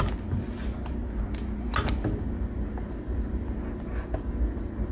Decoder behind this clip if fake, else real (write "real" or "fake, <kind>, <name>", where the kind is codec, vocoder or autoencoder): real